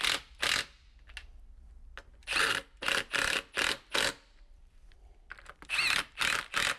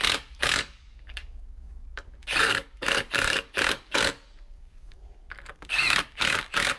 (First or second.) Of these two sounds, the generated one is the second